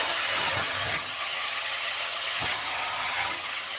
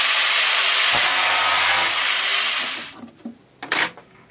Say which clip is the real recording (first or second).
second